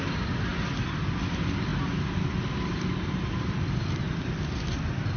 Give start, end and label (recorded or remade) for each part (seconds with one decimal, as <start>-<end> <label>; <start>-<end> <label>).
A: 0.0-5.2 recorded